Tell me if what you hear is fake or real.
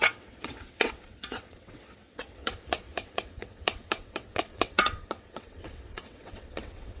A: fake